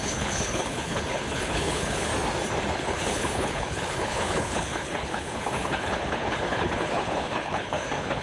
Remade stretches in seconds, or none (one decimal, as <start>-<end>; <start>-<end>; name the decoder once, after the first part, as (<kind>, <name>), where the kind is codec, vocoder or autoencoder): 0.0-2.1 (codec, HILCodec); 2.7-8.2